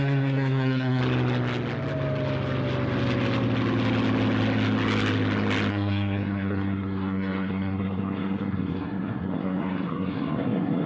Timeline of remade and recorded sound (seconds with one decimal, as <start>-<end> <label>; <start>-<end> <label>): 0.0-1.0 remade; 1.0-5.7 recorded; 5.7-10.9 remade